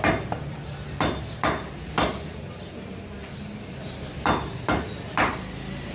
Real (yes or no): yes